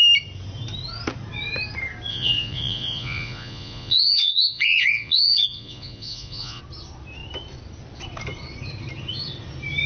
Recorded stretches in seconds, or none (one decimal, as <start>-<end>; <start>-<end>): 0.0-2.1; 6.6-9.9

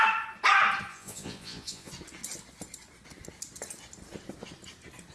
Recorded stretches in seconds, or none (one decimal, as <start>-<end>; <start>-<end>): 0.0-0.9; 1.9-5.1

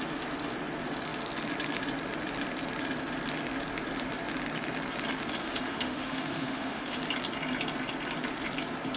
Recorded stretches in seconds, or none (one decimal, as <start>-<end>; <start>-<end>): 0.0-5.4; 7.0-9.0

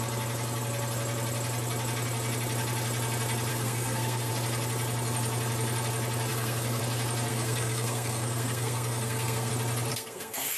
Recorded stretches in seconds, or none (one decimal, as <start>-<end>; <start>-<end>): 0.0-3.5; 4.3-6.3; 6.8-7.3; 9.5-9.9

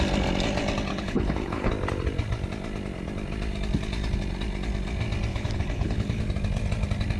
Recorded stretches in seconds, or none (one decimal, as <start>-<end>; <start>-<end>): 0.0-0.9; 1.7-5.3; 6.2-7.2

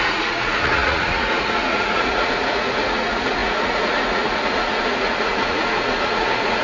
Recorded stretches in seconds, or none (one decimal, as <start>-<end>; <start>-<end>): none

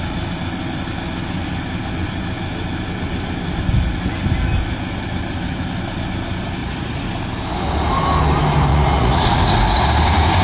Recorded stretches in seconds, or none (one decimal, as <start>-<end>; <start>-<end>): 0.0-6.6; 7.1-8.7; 9.4-10.4